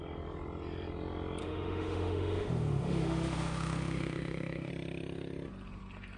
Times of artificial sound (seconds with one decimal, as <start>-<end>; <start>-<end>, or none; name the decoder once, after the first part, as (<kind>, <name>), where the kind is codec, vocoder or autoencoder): 1.4-4.7 (autoencoder, DAC-VAE)